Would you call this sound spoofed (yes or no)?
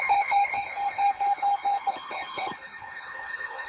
yes